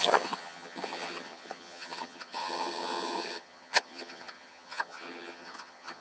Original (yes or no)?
no